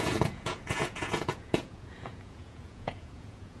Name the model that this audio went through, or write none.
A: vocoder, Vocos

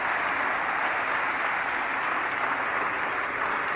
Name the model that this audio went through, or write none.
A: none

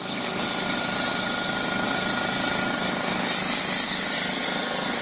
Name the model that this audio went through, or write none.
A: none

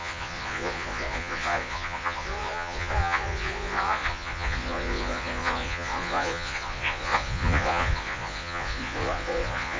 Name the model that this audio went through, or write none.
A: vocoder, Vocos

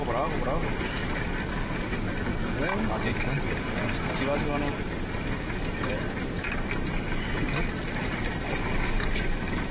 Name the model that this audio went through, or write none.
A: none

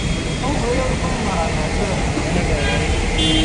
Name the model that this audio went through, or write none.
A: none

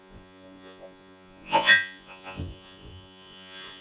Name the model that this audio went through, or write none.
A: vocoder, Vocos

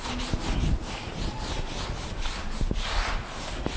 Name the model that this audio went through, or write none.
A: none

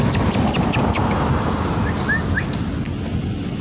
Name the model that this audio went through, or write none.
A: none